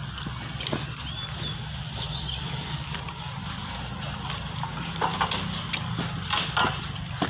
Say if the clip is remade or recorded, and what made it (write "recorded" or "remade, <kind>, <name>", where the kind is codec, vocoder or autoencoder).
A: recorded